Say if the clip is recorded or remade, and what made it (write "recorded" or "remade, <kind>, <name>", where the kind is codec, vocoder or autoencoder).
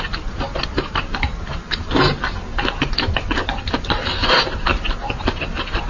remade, vocoder, BigVGAN v2